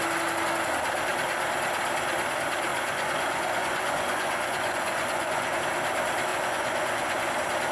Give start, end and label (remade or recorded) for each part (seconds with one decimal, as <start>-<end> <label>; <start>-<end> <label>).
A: 0.0-2.7 recorded; 2.7-5.6 remade; 5.6-6.3 recorded; 6.3-7.3 remade; 7.3-7.7 recorded